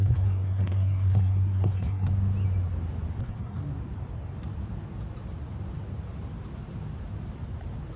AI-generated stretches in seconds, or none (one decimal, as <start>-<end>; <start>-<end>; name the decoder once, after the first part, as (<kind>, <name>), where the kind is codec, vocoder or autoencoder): 0.0-2.1 (codec, SNAC); 3.2-3.6